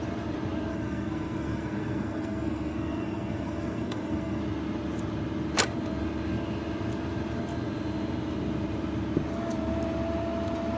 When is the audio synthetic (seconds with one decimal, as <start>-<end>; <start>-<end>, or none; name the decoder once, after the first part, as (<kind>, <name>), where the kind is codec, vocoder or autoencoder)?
0.7-4.4 (codec, SNAC)